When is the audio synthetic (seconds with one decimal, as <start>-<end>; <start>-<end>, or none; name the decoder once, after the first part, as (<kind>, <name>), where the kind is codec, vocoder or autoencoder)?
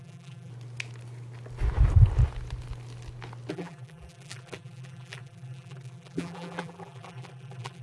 0.0-0.5 (vocoder, BigVGAN v2); 3.5-7.8